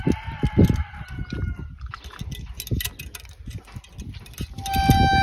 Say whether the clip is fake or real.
real